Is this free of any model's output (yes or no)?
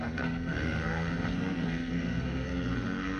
no